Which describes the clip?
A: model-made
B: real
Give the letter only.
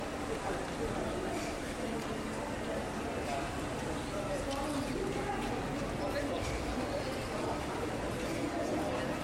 B